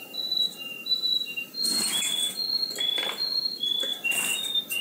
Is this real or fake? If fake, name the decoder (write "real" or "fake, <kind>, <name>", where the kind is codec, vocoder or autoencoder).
real